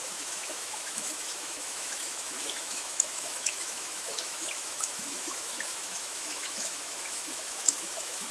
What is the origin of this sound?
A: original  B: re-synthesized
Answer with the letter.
B